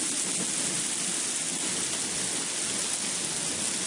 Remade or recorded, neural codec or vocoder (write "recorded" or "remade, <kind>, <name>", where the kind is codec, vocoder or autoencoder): recorded